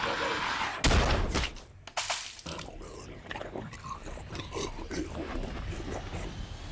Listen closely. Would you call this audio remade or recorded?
recorded